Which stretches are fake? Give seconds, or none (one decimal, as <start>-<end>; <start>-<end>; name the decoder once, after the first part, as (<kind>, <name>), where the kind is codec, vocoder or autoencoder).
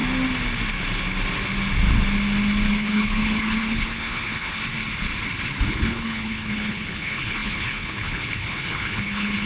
2.7-4.6 (codec, HILCodec); 5.7-9.5